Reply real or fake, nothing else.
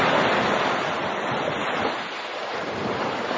real